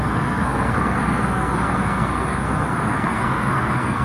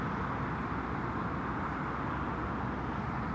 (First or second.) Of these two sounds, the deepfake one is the first